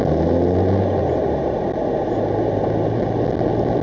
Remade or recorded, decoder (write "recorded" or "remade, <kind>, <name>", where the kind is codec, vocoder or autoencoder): recorded